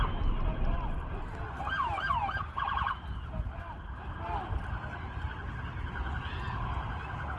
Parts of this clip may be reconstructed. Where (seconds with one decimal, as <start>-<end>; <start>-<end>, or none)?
none